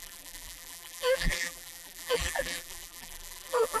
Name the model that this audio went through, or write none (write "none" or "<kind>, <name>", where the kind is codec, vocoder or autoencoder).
vocoder, BigVGAN v2